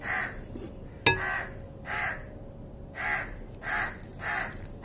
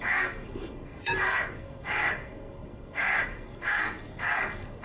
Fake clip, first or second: second